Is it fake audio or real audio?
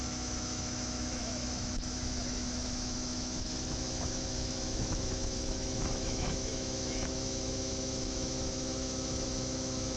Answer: fake